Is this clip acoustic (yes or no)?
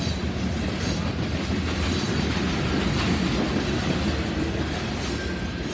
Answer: yes